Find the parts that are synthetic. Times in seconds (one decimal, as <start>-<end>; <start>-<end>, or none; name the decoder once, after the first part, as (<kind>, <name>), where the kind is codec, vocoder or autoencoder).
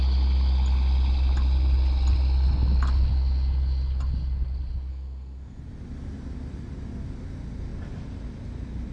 4.9-5.6 (codec, SNAC)